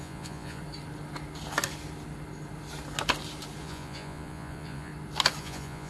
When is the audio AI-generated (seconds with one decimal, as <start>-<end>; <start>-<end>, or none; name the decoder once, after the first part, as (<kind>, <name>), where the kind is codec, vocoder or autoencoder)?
0.0-0.6 (vocoder, Vocos); 3.6-4.9; 5.4-5.9